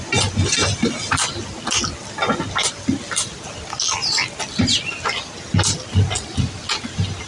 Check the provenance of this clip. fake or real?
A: real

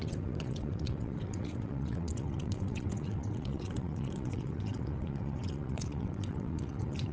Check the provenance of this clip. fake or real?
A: fake